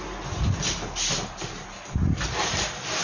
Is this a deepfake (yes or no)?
no